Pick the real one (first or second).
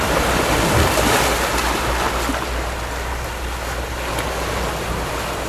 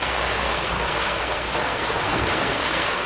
first